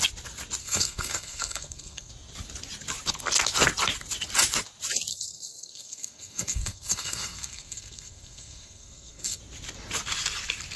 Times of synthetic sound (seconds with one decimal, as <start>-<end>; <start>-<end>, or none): 0.6-2.1; 5.1-9.4